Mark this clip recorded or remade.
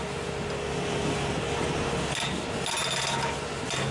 recorded